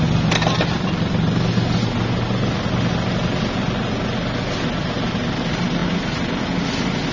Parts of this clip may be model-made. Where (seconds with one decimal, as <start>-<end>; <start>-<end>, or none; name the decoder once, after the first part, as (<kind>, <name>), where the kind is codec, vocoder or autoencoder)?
none